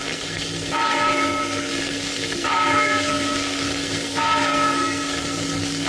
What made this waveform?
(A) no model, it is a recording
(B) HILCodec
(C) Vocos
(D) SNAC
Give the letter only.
D